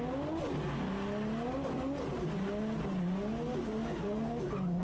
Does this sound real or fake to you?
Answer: real